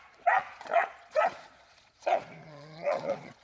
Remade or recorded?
remade